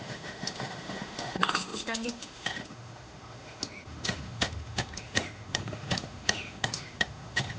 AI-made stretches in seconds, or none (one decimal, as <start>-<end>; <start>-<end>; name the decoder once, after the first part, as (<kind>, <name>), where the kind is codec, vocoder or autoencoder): 0.0-7.6 (autoencoder, DAC-VAE)